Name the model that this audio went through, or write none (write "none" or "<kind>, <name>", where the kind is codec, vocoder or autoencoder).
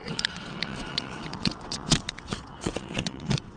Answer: vocoder, WaveNeXt